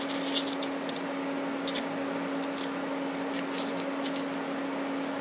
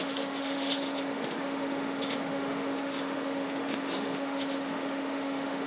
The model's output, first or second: second